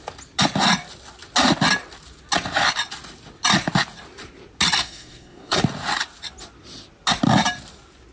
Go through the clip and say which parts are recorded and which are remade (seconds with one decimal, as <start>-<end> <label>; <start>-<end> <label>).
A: 0.0-4.8 recorded; 4.8-5.6 remade; 5.6-8.1 recorded